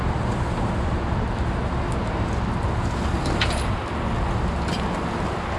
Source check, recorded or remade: recorded